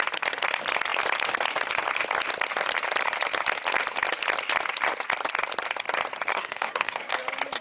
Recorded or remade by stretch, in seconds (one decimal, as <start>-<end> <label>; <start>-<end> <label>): 0.0-6.3 recorded; 6.3-7.1 remade; 7.1-7.6 recorded

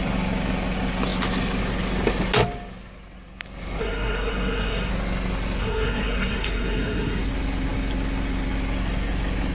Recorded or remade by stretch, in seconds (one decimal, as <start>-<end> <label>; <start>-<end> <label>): 0.0-3.8 recorded; 3.8-4.9 remade; 4.9-5.6 recorded; 5.6-7.2 remade; 7.2-9.5 recorded

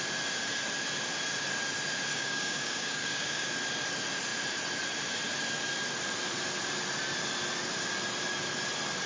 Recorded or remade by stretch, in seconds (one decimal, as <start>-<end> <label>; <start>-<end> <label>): 0.0-2.1 recorded; 2.1-3.5 remade; 3.5-9.1 recorded